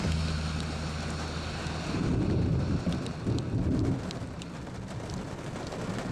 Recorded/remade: recorded